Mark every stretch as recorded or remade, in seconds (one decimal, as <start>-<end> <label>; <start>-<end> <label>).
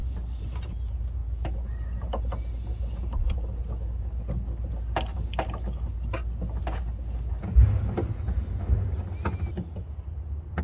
0.0-0.7 remade; 0.7-10.6 recorded